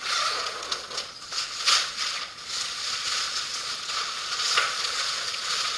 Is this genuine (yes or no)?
no